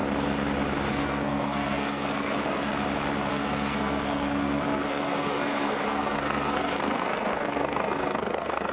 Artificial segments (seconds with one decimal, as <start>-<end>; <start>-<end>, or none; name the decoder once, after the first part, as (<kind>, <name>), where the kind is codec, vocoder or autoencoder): 0.9-2.7 (codec, SNAC); 3.3-8.7

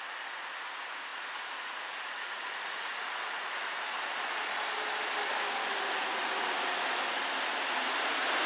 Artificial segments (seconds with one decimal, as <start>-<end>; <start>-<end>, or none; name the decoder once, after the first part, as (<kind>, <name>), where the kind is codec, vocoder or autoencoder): 1.1-3.5 (vocoder, Vocos)